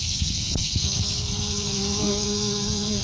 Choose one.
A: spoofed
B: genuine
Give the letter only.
A